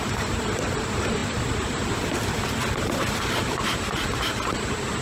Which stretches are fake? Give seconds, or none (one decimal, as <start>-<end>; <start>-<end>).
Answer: 0.0-5.0

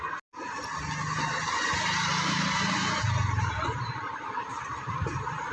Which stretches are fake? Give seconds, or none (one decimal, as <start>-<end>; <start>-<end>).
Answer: 2.1-5.5

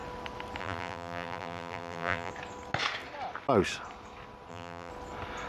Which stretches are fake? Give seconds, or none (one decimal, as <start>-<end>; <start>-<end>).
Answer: 0.6-2.3; 4.5-4.9

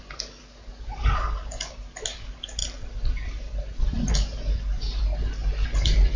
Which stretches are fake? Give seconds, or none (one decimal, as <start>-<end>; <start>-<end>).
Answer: 2.6-4.1

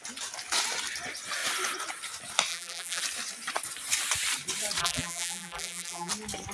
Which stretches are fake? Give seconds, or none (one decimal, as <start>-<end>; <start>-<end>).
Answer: 2.5-3.0; 4.8-6.1

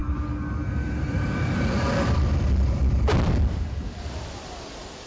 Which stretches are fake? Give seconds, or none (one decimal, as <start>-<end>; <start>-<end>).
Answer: 0.7-5.1